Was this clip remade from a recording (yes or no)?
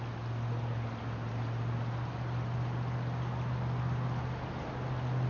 no